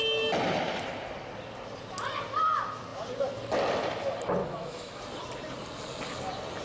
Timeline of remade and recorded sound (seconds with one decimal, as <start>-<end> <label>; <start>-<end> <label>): 0.0-4.4 recorded; 4.4-5.0 remade; 5.0-6.6 recorded

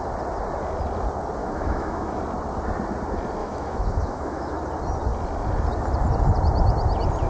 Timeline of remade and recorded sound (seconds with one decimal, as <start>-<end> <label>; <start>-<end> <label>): 0.0-1.4 recorded; 1.4-2.2 remade; 2.2-3.4 recorded; 3.4-4.6 remade; 4.6-7.3 recorded

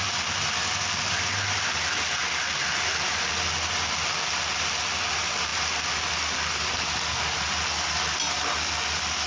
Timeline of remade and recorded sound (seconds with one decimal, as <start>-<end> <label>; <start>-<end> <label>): 0.0-9.3 recorded

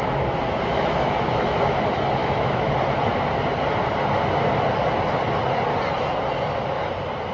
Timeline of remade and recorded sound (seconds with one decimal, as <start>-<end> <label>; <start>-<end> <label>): 0.0-0.7 recorded; 0.7-1.6 remade; 1.6-2.2 recorded; 2.2-2.7 remade; 2.7-7.3 recorded

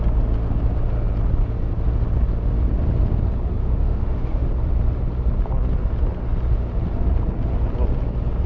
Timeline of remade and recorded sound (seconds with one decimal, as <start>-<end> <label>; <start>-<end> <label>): 0.0-3.6 recorded; 3.6-4.5 remade; 4.5-8.5 recorded